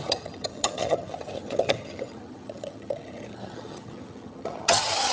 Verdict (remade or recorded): remade